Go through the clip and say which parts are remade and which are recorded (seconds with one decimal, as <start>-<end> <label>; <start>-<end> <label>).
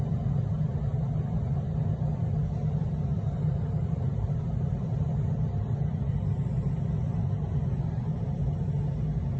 0.0-9.4 recorded